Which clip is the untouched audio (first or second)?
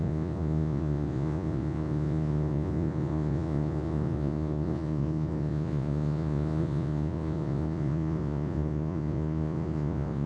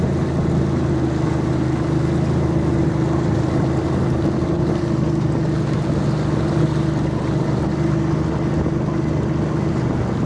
second